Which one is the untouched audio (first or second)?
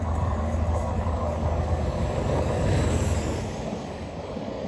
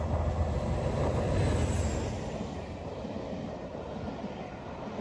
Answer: second